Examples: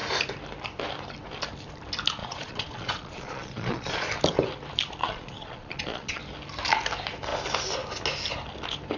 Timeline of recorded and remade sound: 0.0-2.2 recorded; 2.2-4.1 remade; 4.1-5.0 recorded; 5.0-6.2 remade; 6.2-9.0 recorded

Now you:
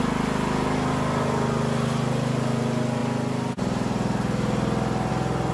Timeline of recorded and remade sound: 0.0-5.5 recorded

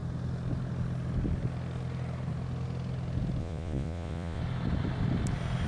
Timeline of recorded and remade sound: 0.0-3.4 recorded; 3.4-4.4 remade; 4.4-5.7 recorded